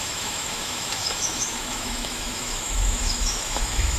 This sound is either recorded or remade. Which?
remade